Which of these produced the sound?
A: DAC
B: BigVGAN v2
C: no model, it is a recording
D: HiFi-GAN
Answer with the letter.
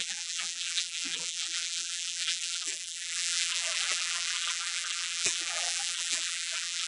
B